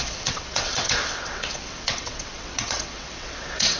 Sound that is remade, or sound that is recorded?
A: remade